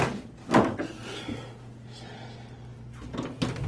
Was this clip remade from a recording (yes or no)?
no